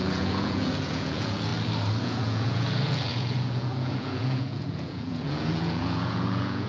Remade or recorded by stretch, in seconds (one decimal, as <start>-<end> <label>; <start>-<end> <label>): 0.0-1.5 remade; 1.5-2.0 recorded; 2.0-6.7 remade